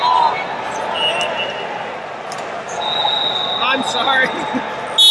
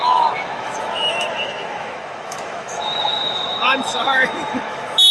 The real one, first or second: first